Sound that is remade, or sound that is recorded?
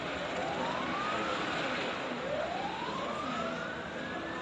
recorded